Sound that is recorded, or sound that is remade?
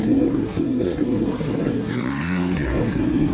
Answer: remade